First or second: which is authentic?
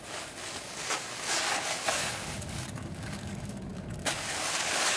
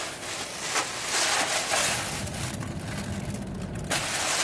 second